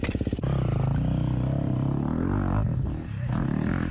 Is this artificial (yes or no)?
no